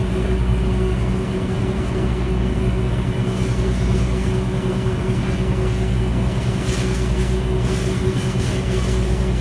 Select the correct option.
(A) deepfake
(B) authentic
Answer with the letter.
A